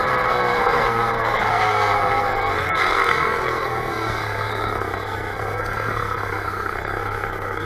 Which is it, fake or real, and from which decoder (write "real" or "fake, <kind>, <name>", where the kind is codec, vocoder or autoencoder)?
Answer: fake, codec, SNAC